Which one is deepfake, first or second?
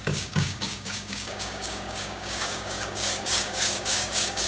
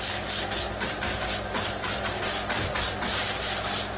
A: first